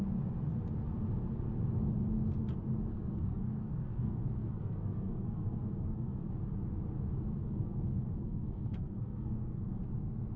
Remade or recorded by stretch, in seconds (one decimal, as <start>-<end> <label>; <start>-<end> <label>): 0.0-2.9 recorded; 2.9-6.3 remade; 6.3-7.4 recorded; 7.4-9.8 remade; 9.8-10.4 recorded